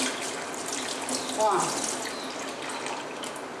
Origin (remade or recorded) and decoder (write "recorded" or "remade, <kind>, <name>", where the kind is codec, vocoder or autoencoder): recorded